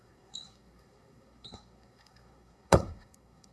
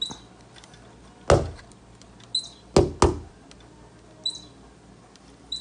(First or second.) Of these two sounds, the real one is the second